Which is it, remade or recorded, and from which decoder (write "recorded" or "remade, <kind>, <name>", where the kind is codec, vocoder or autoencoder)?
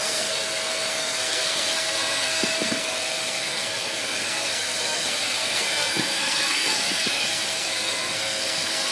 remade, codec, SNAC